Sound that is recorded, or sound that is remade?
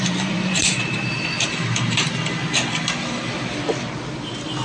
remade